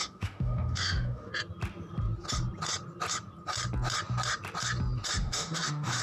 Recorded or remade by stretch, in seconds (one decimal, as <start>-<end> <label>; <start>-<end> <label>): 0.0-1.3 remade; 1.3-5.2 recorded; 5.2-6.0 remade